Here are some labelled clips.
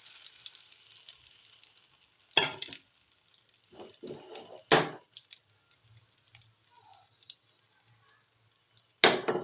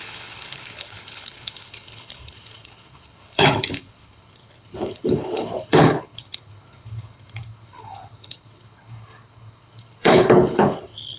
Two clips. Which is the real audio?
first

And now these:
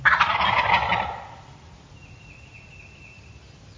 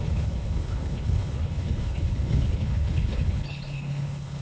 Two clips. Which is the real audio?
first